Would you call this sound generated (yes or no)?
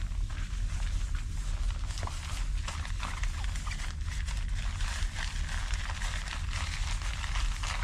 no